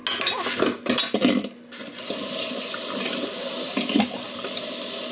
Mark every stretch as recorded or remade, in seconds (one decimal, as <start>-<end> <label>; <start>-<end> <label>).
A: 0.0-5.1 recorded